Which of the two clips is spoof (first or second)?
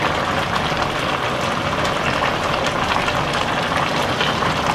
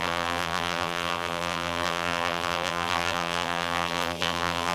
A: second